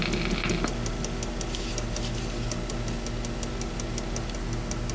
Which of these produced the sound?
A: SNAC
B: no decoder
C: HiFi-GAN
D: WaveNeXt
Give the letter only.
B